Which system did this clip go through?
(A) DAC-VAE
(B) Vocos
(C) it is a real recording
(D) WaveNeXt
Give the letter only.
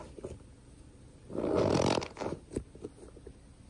C